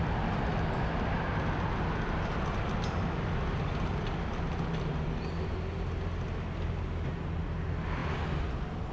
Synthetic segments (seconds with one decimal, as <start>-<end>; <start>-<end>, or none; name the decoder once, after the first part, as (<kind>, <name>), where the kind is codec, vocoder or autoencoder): none